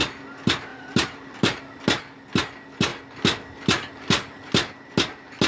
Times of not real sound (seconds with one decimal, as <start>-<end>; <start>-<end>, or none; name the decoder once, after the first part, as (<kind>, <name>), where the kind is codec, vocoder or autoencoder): 0.7-1.6 (vocoder, BigVGAN v2)